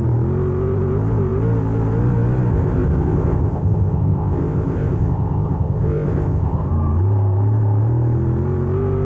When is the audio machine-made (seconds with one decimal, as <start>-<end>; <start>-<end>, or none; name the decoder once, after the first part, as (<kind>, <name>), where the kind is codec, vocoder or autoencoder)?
2.5-6.7 (codec, ZipCodec)

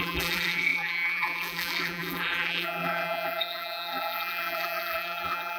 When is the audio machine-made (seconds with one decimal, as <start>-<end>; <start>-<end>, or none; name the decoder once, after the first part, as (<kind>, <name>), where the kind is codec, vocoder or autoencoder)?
0.0-5.6 (vocoder, BigVGAN v2)

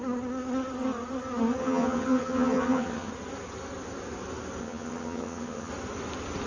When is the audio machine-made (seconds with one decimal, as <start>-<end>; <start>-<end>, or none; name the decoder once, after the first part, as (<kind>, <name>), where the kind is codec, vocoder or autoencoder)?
1.6-3.1 (vocoder, HiFi-GAN); 4.6-5.7

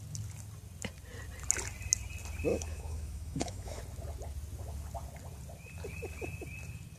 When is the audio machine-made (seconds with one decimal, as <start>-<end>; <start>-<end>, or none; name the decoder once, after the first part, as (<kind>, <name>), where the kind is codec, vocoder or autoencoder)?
2.5-3.8 (autoencoder, DAC-VAE)

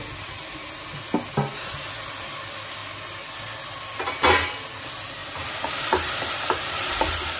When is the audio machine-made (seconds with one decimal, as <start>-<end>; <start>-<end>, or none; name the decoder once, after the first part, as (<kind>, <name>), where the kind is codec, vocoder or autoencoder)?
5.2-7.4 (vocoder, BigVGAN v2)